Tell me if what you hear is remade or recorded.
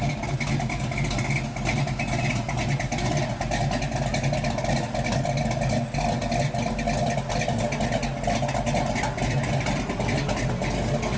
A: recorded